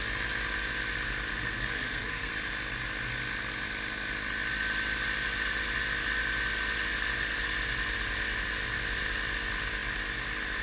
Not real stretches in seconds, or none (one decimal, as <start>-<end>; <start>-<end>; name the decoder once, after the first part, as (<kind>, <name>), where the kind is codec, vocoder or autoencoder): 1.3-2.3 (codec, SNAC)